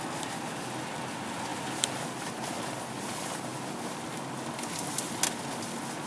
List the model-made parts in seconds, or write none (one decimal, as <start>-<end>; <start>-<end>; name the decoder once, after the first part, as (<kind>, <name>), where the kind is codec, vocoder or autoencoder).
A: none